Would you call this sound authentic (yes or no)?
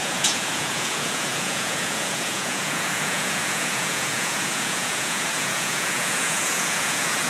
no